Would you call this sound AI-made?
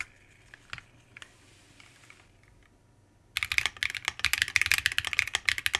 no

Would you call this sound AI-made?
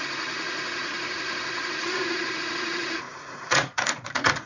yes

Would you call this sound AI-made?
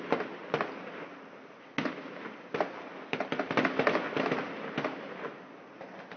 no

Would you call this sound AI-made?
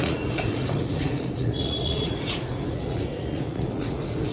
yes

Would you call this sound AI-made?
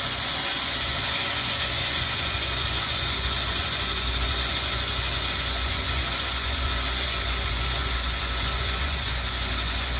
yes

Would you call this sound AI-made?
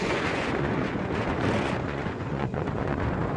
yes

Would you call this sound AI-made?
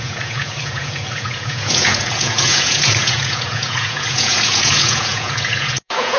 yes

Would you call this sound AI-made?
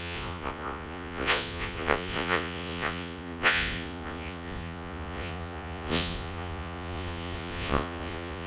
yes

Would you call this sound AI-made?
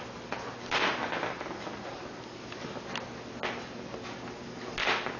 no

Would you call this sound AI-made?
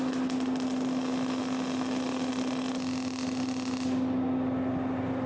no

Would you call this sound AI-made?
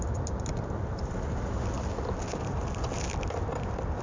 no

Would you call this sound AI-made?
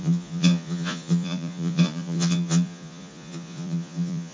yes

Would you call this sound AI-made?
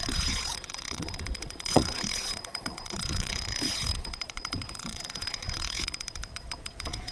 yes